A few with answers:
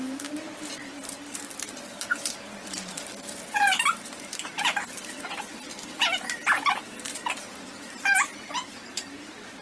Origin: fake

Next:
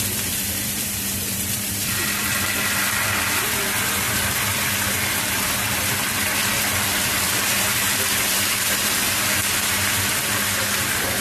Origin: fake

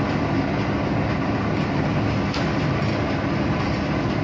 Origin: real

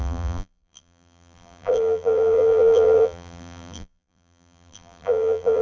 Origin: fake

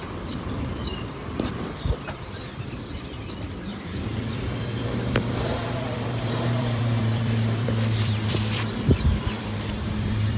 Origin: fake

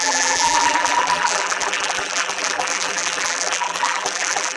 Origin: fake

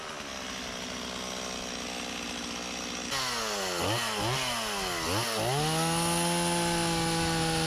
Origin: real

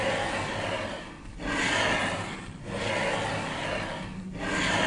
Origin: real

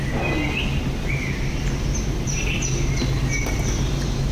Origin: real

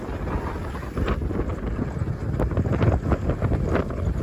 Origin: real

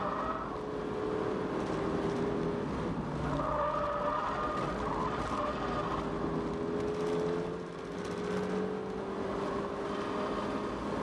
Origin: real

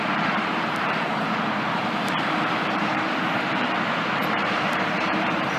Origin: fake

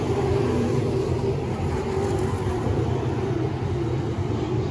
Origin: fake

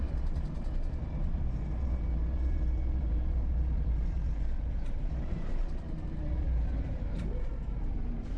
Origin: fake